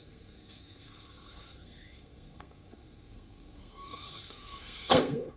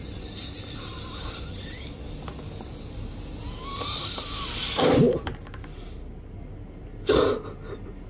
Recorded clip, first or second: second